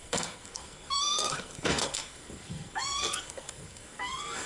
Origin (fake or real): fake